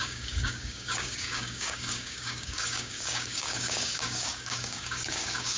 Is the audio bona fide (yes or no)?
no